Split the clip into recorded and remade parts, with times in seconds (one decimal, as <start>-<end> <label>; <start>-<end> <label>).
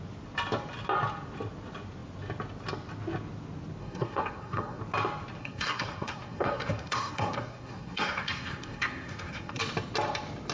0.0-3.8 recorded; 3.8-4.8 remade; 4.8-5.4 recorded; 5.4-9.6 remade; 9.6-10.5 recorded